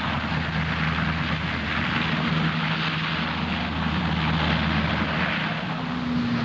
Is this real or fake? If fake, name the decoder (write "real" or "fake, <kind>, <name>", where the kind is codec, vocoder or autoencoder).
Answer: real